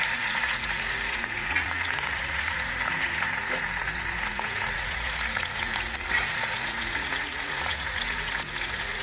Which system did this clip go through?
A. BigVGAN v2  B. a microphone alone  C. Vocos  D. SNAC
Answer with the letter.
C